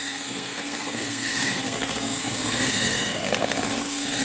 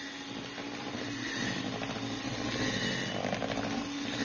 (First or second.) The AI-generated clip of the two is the first